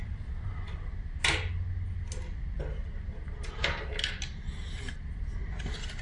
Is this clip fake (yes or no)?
no